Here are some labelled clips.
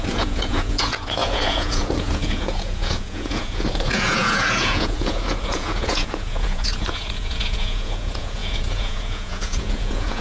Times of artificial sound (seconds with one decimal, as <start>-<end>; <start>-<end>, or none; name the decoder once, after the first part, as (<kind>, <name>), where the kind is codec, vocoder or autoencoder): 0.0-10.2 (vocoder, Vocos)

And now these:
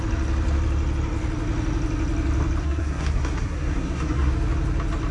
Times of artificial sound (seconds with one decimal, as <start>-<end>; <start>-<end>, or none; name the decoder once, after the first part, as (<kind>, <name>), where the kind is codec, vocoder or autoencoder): 2.6-4.3 (codec, SNAC)

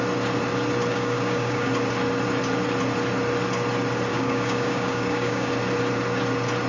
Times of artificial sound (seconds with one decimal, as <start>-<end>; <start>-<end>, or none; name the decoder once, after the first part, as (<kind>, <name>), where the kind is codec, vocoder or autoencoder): 0.9-1.7 (codec, DAC); 4.1-5.5

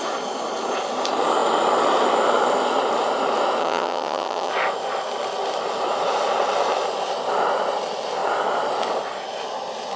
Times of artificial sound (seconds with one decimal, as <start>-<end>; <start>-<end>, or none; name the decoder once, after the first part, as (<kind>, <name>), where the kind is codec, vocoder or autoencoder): 3.6-4.5 (vocoder, HiFi-GAN)

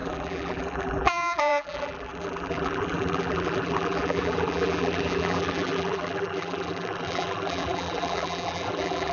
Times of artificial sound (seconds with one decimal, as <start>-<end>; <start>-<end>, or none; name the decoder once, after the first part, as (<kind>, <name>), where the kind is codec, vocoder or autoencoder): 0.0-9.1 (vocoder, BigVGAN v2)

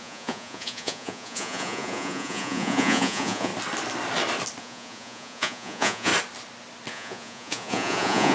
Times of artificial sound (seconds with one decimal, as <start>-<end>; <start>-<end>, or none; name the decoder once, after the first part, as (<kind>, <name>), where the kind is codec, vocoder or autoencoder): 0.0-3.5 (vocoder, Vocos); 4.6-6.1; 6.9-8.3